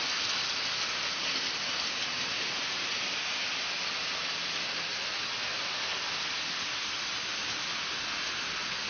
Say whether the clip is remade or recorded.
recorded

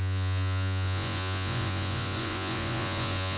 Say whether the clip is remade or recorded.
remade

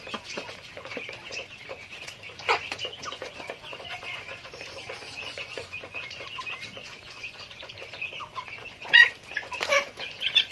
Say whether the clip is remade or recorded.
remade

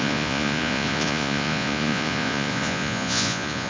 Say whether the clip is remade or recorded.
remade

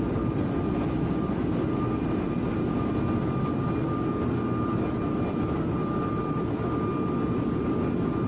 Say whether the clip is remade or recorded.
recorded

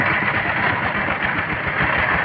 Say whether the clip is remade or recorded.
recorded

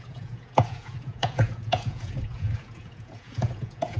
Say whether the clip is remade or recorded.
remade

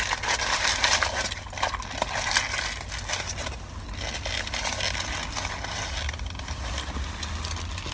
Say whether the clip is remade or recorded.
recorded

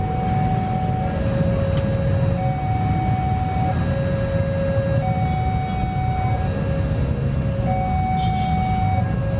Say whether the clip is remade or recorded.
recorded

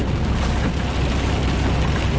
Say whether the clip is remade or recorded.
recorded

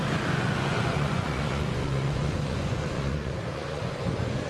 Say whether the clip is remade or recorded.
remade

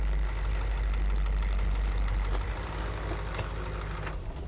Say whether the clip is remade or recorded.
recorded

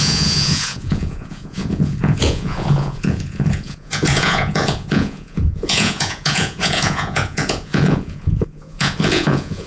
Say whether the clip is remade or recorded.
remade